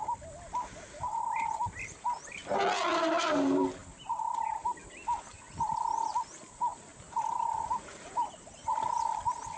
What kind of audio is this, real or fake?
real